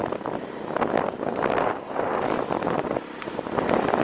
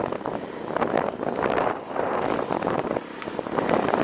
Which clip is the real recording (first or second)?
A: first